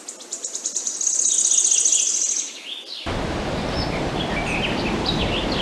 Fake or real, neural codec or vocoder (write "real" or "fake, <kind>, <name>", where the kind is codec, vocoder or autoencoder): real